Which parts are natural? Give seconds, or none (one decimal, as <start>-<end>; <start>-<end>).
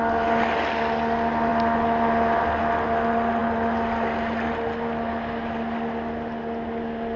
0.0-7.2